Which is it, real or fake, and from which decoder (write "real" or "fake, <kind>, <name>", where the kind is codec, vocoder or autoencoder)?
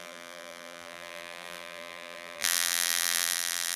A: fake, vocoder, BigVGAN v2